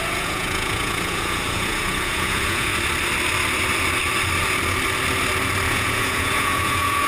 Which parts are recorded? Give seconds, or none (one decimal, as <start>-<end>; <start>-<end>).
2.7-5.7